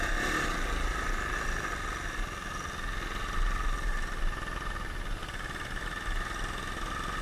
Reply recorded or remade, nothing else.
recorded